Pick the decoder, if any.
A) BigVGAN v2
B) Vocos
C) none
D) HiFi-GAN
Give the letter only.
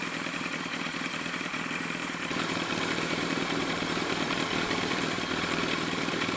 A